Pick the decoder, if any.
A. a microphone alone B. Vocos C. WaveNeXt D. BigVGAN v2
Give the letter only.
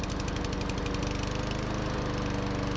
A